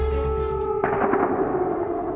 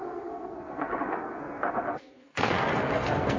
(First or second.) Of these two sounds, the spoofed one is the second